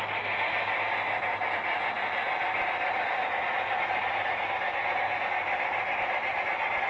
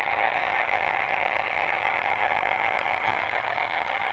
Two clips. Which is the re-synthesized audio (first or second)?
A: second